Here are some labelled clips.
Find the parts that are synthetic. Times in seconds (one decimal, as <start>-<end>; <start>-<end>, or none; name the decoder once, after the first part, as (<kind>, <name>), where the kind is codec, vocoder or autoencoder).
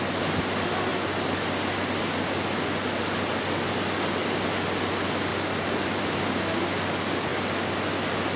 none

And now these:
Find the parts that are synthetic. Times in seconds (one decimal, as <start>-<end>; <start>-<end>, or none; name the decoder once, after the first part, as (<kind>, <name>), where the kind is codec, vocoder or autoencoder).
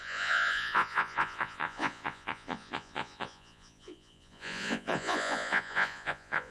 0.0-6.5 (vocoder, Vocos)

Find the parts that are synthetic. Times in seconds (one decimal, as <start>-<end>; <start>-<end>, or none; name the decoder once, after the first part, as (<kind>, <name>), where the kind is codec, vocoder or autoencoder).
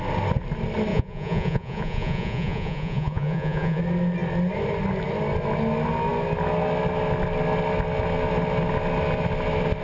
0.9-3.8 (vocoder, Vocos)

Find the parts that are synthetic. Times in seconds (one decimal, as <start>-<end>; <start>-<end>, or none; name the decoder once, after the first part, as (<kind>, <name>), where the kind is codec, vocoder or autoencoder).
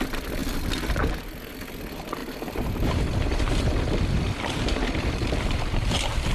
2.2-6.3 (vocoder, BigVGAN v2)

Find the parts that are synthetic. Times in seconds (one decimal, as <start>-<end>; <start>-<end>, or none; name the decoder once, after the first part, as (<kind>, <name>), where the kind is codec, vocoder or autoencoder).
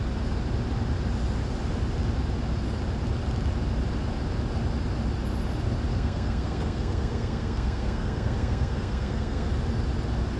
5.9-9.5 (codec, SNAC)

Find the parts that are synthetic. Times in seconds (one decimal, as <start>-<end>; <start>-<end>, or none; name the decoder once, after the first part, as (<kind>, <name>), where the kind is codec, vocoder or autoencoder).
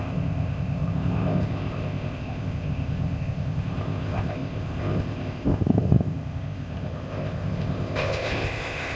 0.0-9.0 (codec, ZipCodec)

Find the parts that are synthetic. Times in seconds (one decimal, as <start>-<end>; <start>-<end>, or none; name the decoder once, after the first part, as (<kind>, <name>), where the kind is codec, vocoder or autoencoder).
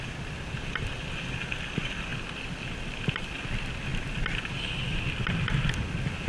none